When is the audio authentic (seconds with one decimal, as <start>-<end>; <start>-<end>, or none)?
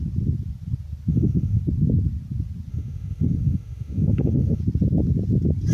0.0-1.1; 1.6-2.7; 4.6-5.7